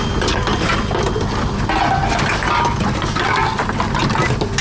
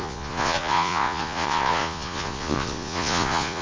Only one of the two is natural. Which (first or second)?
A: first